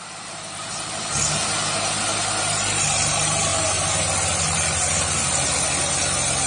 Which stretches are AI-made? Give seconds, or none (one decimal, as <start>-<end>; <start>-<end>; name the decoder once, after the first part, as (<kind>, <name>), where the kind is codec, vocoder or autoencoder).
none